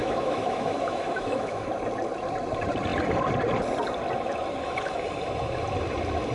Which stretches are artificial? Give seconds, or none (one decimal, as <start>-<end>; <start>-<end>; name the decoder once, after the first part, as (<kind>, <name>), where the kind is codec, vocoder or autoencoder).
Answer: 0.0-1.7 (autoencoder, DAC-VAE)